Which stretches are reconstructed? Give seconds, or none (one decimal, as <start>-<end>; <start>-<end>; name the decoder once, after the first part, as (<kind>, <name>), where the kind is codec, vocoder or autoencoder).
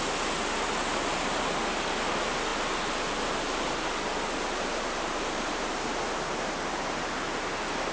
none